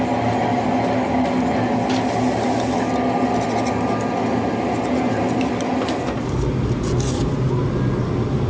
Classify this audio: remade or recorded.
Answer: recorded